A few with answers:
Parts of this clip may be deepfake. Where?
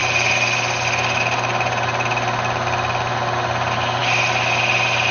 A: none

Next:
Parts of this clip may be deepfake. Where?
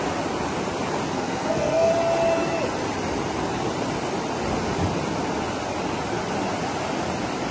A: 1.1-1.9 (codec, SNAC)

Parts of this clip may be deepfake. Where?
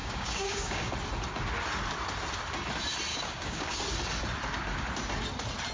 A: 0.0-0.9 (codec, DAC); 3.1-3.8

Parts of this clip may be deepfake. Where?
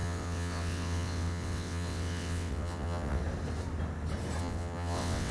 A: 0.0-3.2 (vocoder, WaveNeXt); 4.4-5.3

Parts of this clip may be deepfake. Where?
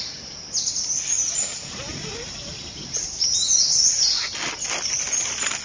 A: none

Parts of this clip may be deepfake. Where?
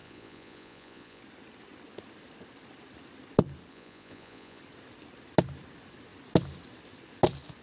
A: 0.0-1.2 (vocoder, Vocos); 3.7-4.6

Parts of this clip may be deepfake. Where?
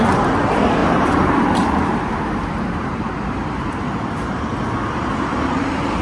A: 0.8-4.4 (vocoder, BigVGAN v2)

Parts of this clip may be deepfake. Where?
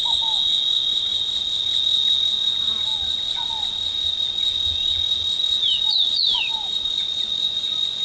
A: 5.9-6.5 (vocoder, Vocos); 6.9-8.0